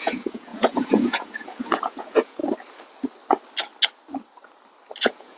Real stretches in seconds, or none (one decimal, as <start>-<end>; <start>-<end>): 2.4-5.0